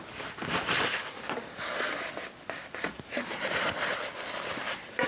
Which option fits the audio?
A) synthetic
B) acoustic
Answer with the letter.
B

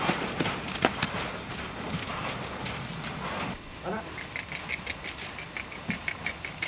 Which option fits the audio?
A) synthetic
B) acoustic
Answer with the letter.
B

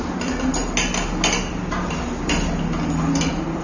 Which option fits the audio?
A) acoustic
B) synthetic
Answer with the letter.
A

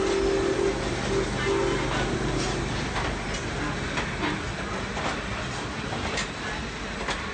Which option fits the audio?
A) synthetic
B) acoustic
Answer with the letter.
B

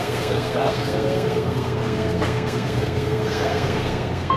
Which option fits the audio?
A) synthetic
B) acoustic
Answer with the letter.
A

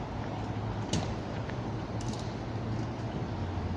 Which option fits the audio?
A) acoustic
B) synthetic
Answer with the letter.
A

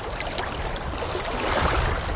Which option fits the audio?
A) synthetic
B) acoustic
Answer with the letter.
A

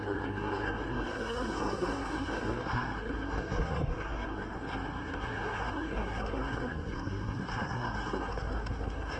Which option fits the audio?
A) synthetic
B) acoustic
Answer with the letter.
A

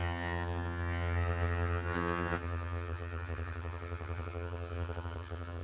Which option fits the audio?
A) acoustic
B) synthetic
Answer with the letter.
B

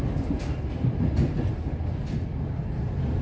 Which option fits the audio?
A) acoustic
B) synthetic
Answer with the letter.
A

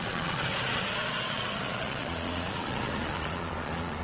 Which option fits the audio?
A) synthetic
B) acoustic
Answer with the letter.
A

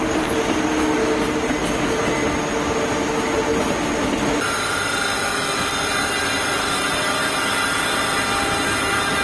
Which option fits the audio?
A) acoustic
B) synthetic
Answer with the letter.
A